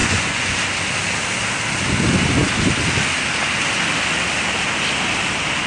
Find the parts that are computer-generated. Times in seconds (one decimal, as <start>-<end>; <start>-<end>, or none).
0.0-0.6